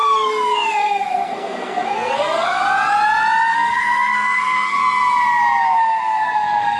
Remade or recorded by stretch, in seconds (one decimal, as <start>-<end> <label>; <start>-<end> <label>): 0.0-2.6 remade; 2.6-3.5 recorded; 3.5-4.8 remade; 4.8-5.6 recorded; 5.6-6.8 remade